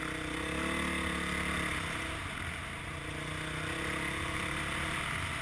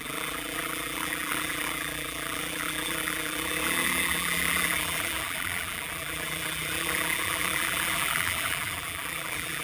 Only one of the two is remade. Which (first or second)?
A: second